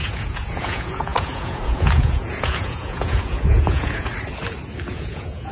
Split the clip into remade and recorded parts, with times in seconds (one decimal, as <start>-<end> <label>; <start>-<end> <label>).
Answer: 0.0-4.1 remade; 4.1-4.9 recorded; 4.9-5.5 remade